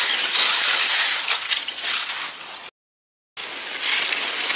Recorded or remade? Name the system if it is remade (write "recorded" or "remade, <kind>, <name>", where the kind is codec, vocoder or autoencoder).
recorded